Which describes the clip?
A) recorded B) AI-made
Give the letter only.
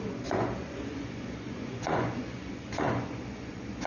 B